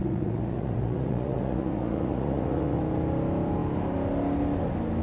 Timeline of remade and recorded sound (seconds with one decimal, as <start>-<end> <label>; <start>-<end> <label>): 0.0-2.8 remade; 2.8-5.0 recorded